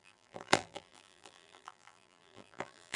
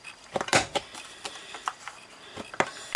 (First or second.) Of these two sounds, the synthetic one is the first